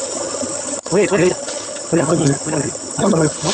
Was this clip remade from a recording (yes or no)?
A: yes